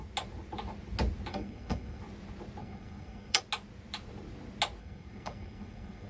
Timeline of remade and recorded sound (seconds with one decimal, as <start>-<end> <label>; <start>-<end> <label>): 0.0-1.3 recorded; 1.3-2.0 remade; 2.0-2.6 recorded; 2.6-3.4 remade; 3.4-4.8 recorded; 4.8-6.1 remade

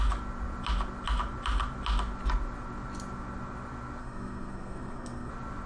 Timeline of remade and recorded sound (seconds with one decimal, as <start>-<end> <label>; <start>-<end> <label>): 0.0-4.0 recorded; 4.0-5.3 remade; 5.3-5.7 recorded

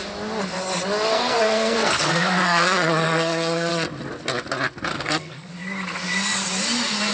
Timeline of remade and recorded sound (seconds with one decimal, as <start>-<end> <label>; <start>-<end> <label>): 0.0-1.1 recorded; 1.1-3.7 remade; 3.7-4.9 recorded; 4.9-5.5 remade; 5.5-7.1 recorded

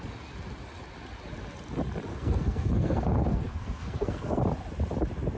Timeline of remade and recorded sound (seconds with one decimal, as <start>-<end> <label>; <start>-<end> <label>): 0.0-2.1 recorded; 2.1-4.4 remade; 4.4-5.4 recorded

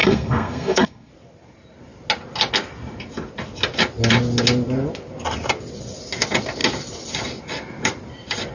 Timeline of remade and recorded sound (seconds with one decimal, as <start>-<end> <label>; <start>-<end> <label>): 0.0-1.1 remade; 1.1-8.5 recorded

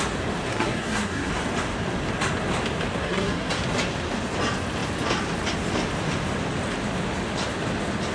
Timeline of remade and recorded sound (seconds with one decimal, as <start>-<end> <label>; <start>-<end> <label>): 0.0-0.5 recorded; 0.5-1.3 remade; 1.3-3.0 recorded; 3.0-3.5 remade; 3.5-8.1 recorded

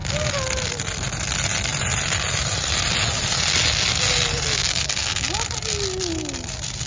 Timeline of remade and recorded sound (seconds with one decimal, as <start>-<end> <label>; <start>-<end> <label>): 0.0-6.9 recorded

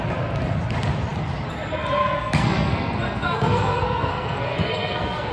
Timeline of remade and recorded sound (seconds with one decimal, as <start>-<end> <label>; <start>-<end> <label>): 0.0-2.0 recorded; 2.0-5.3 remade